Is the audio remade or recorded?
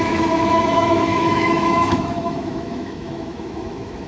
remade